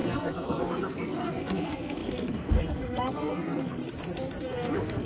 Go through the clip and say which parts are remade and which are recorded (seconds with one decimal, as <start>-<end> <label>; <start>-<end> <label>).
0.0-3.8 remade; 3.8-4.4 recorded; 4.4-5.1 remade